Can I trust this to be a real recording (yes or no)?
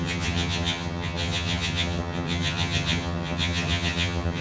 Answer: no